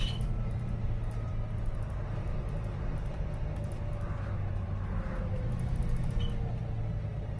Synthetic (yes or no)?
no